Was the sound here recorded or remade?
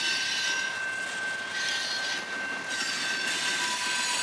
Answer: recorded